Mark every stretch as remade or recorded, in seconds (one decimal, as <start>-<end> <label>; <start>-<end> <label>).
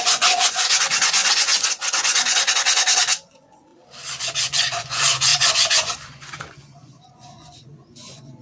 0.0-3.7 remade; 3.7-4.2 recorded; 4.2-8.4 remade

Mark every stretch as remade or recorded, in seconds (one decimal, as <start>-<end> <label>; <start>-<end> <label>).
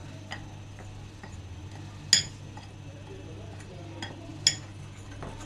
0.0-5.5 recorded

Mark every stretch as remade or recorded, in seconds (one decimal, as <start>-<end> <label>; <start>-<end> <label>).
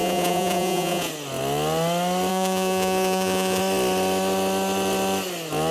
0.0-1.1 remade; 1.1-2.3 recorded; 2.3-3.6 remade; 3.6-5.7 recorded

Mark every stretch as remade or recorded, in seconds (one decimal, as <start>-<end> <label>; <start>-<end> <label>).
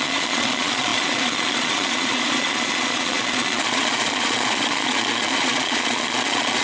0.0-6.6 remade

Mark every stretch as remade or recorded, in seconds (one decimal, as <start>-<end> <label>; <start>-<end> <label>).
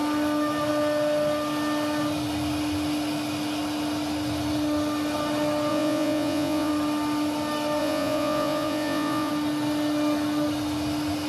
0.0-5.7 recorded; 5.7-6.7 remade; 6.7-7.8 recorded; 7.8-9.3 remade; 9.3-11.3 recorded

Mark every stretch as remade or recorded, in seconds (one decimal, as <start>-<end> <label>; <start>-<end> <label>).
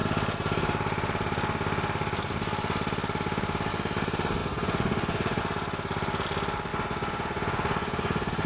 0.0-4.4 recorded; 4.4-5.4 remade; 5.4-6.7 recorded; 6.7-8.5 remade